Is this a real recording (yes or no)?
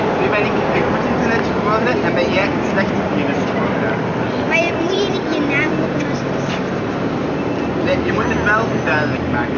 yes